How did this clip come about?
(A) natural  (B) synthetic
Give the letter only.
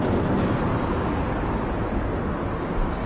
A